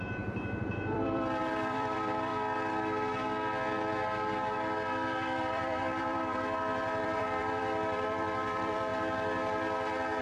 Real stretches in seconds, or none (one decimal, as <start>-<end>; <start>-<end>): 2.3-5.4; 8.9-10.2